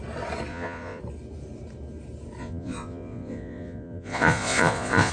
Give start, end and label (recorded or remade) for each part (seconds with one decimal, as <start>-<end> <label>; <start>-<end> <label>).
0.0-0.5 recorded; 0.5-1.0 remade; 1.0-2.4 recorded; 2.4-5.1 remade